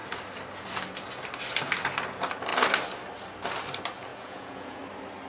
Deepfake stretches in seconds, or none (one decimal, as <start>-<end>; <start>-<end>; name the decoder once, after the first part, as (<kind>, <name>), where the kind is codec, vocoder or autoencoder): 4.1-4.8 (vocoder, Vocos)